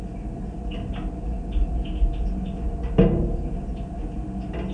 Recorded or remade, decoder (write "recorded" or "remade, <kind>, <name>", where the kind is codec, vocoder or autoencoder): recorded